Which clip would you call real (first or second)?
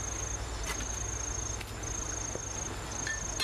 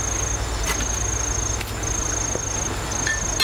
second